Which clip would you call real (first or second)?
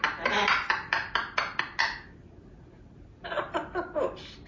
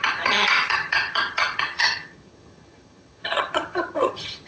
first